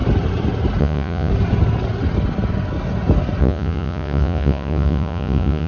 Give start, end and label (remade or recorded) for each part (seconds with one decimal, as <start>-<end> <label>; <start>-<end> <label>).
0.0-0.8 recorded; 0.8-1.3 remade; 1.3-3.4 recorded; 3.4-5.7 remade